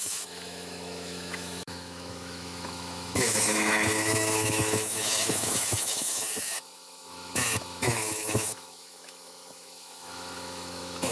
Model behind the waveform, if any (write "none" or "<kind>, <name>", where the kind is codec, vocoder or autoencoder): autoencoder, DAC-VAE